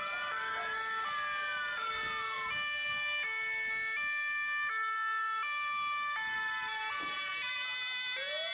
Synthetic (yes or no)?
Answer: no